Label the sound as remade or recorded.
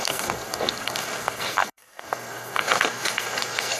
remade